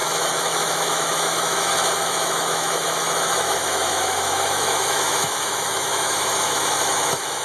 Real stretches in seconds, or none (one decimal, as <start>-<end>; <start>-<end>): none